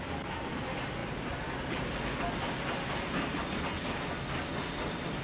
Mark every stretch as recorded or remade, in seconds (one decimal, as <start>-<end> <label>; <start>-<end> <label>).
0.0-5.2 recorded